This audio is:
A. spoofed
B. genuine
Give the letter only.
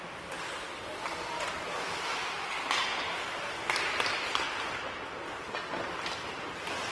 B